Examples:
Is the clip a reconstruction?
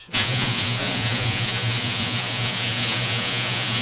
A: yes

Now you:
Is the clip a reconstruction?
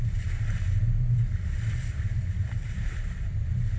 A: no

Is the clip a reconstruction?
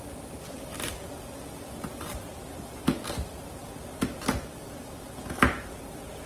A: yes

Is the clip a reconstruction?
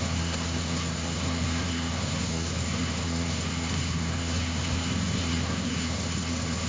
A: yes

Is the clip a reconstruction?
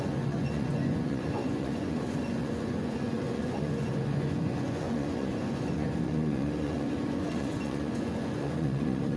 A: yes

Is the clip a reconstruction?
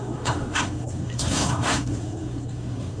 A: yes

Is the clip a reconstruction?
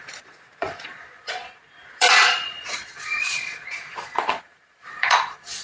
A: yes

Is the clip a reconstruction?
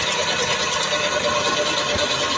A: no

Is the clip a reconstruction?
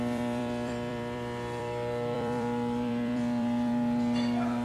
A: yes